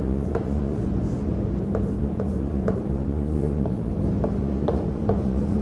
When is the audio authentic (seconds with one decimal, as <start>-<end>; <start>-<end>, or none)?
1.3-2.0; 3.9-4.4